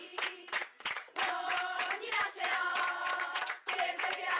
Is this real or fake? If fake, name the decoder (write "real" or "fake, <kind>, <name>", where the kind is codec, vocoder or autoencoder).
fake, vocoder, WaveNeXt